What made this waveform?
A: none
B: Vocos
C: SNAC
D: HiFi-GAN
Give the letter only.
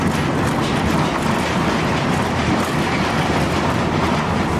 A